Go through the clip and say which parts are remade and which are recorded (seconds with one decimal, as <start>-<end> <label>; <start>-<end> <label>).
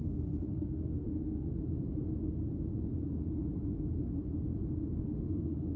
0.0-1.5 remade; 1.5-5.0 recorded; 5.0-5.8 remade